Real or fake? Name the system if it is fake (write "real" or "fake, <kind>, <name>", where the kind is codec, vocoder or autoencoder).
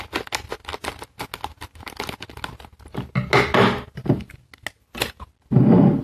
real